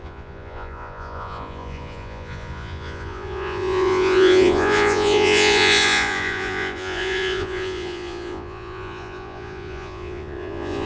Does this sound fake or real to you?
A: fake